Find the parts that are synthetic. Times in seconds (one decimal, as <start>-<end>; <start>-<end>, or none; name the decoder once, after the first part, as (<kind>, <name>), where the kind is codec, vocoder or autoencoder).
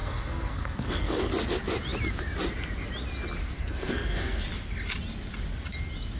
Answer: 0.0-1.3 (codec, SNAC); 3.4-4.4